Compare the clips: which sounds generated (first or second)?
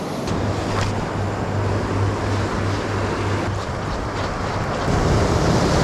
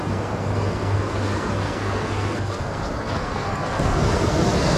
second